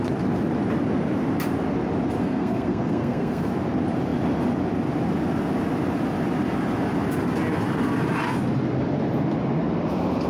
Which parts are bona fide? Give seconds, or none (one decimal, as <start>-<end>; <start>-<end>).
0.0-2.2; 3.5-10.3